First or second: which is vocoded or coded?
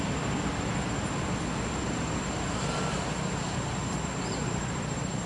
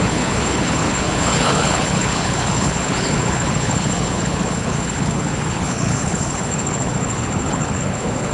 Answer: second